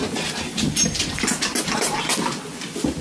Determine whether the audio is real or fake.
real